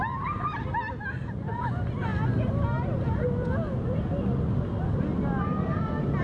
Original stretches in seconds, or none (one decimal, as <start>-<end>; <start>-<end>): 0.0-6.2